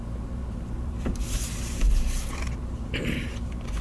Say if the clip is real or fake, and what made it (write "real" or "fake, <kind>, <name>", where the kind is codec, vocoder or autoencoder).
fake, vocoder, BigVGAN v2